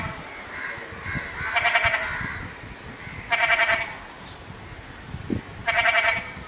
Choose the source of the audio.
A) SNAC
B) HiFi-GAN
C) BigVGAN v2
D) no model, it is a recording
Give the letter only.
D